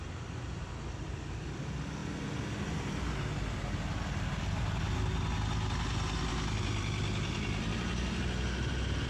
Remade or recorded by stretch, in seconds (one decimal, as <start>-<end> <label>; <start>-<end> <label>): 0.0-9.1 recorded